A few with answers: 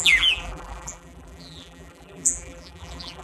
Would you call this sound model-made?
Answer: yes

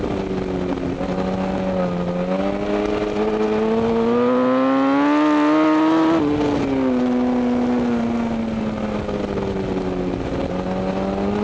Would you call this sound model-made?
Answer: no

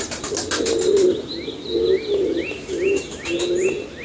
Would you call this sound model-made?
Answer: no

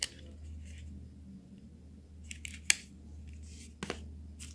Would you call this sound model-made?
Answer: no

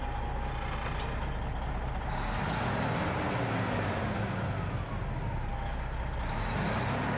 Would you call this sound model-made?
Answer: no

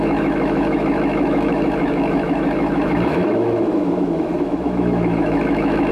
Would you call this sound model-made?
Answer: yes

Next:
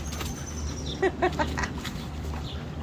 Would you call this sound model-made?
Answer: no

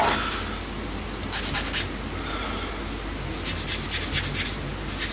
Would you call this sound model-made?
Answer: no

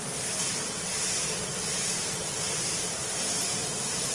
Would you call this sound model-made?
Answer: yes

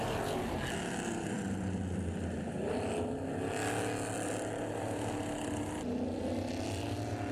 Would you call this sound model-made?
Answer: no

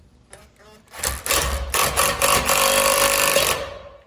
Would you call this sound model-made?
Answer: no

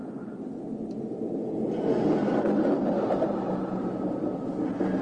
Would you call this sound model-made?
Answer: no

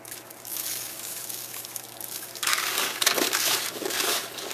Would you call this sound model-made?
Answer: yes